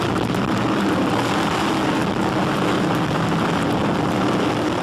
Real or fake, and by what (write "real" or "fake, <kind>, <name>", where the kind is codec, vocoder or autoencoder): real